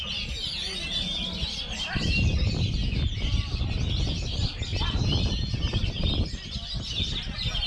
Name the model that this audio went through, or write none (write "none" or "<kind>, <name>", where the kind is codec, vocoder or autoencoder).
none